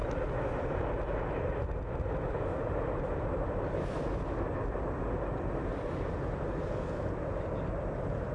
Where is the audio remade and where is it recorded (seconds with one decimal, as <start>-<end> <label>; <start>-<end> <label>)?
0.0-8.3 recorded